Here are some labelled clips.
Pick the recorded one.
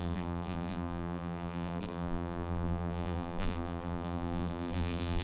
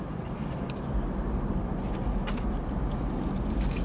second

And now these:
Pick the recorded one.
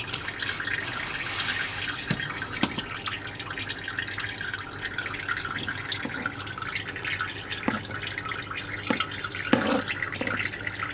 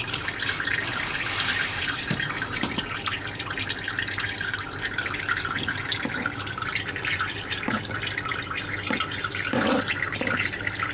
first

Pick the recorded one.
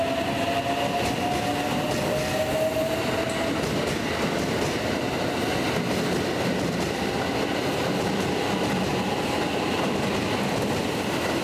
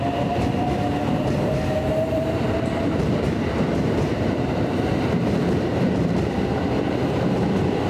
first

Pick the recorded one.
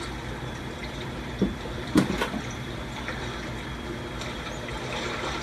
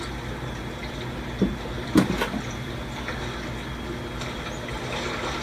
second